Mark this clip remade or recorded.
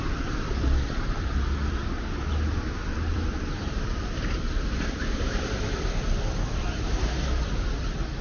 remade